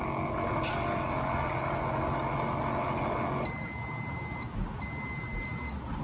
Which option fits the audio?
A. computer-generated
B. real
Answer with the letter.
B